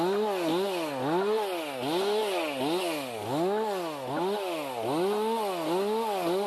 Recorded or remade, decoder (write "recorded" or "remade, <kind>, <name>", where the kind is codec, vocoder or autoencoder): recorded